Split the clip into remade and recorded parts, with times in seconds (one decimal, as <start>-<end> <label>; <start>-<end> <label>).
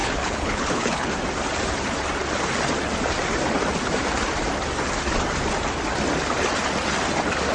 0.0-1.1 remade; 1.1-7.5 recorded